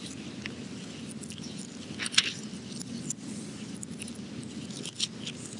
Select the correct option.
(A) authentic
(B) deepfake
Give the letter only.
A